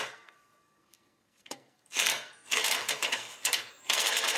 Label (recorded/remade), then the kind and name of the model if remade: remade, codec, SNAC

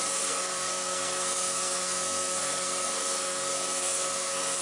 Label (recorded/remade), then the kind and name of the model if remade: remade, codec, SNAC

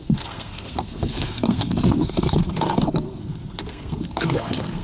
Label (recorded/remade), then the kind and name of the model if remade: remade, codec, SNAC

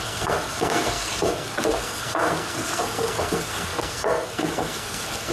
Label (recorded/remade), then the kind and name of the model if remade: remade, codec, SNAC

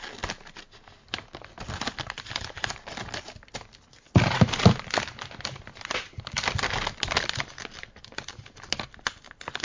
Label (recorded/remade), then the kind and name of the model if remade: recorded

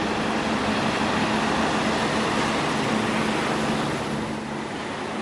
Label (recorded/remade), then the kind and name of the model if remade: recorded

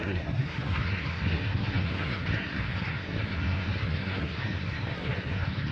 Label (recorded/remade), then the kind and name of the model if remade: remade, codec, SNAC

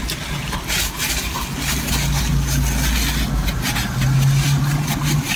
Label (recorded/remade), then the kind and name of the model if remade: recorded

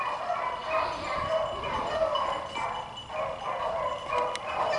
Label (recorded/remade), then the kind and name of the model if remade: recorded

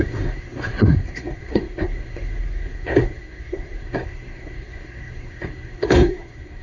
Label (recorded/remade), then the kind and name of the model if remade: remade, codec, SNAC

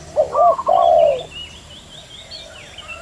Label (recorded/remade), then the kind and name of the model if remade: recorded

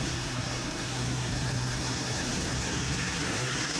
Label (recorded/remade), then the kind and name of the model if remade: remade, codec, SNAC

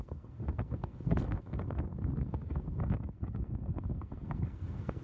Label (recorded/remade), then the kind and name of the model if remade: remade, codec, SNAC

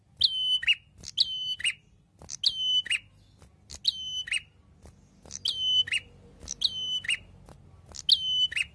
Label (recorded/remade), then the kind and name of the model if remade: recorded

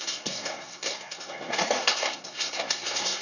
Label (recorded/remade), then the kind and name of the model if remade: remade, codec, SNAC